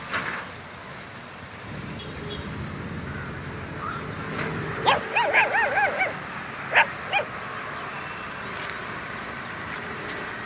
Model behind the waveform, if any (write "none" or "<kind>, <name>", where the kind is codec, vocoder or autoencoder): none